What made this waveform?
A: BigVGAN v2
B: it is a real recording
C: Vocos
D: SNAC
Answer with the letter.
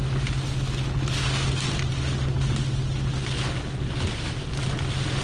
B